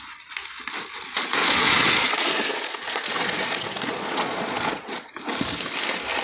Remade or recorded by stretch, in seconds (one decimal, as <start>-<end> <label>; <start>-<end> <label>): 0.0-1.4 recorded; 1.4-5.1 remade; 5.1-6.2 recorded